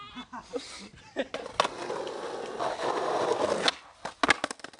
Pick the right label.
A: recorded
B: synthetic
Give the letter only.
A